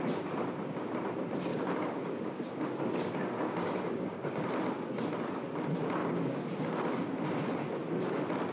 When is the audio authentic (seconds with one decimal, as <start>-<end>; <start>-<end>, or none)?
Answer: 0.0-1.5; 4.5-6.0; 7.0-8.5